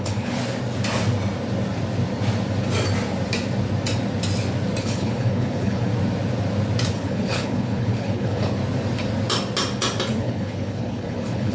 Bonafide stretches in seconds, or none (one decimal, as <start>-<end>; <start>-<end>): 0.4-4.8; 5.9-6.9; 8.6-10.2